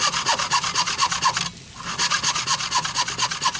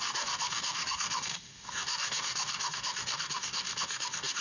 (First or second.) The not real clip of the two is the second